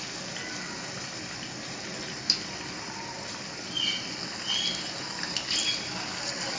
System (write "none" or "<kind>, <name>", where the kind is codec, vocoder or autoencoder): none